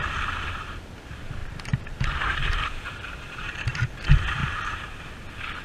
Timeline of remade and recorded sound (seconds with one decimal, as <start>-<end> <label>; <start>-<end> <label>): 0.0-1.4 recorded; 1.4-3.8 remade; 3.8-4.4 recorded; 4.4-5.0 remade; 5.0-5.6 recorded